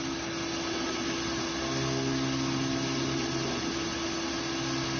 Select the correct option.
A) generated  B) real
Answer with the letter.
B